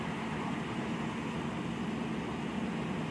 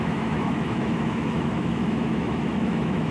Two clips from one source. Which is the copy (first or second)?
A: second